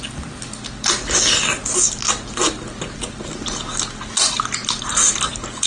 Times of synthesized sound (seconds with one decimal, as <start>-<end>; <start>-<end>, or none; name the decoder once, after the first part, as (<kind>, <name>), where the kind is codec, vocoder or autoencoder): 4.6-5.7 (vocoder, BigVGAN v2)